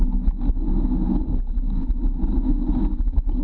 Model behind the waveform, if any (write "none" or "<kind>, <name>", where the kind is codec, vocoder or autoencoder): none